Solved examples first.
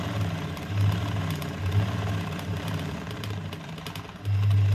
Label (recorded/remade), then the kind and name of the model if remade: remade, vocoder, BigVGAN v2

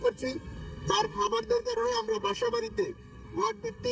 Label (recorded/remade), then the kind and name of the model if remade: remade, codec, SNAC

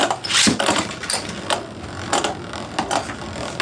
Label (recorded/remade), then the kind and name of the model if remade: recorded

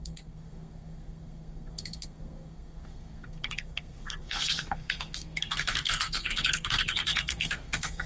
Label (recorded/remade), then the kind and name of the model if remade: remade, codec, SNAC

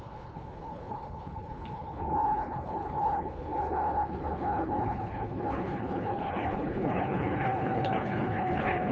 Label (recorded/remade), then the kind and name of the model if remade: remade, codec, HILCodec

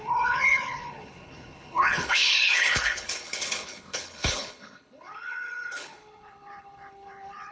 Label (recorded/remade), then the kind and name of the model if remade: remade, codec, HILCodec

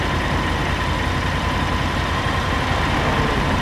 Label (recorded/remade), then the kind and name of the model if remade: recorded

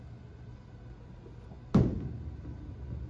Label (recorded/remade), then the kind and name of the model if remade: recorded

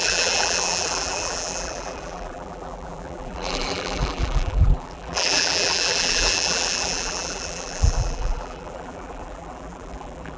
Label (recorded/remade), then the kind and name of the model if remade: remade, vocoder, BigVGAN v2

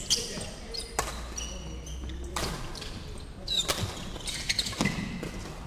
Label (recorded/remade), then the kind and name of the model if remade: recorded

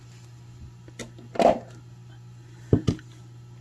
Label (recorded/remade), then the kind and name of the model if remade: recorded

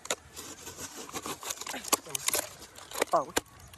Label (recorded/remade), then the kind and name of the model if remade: recorded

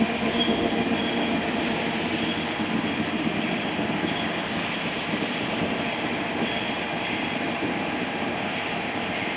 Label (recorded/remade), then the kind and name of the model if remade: remade, vocoder, BigVGAN v2